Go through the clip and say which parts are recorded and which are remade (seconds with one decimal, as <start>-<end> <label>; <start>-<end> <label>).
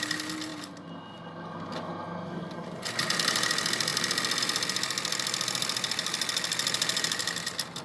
0.0-7.8 recorded